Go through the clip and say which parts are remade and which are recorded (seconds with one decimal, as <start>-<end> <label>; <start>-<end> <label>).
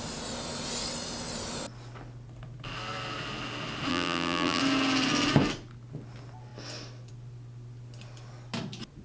0.0-3.9 recorded; 3.9-4.6 remade; 4.6-9.0 recorded